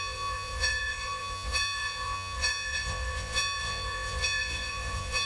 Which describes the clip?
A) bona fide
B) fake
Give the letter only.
B